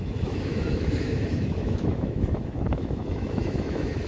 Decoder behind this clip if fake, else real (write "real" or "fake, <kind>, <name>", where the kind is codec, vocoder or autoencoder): fake, autoencoder, DAC-VAE